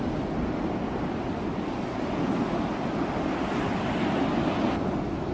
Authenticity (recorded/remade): recorded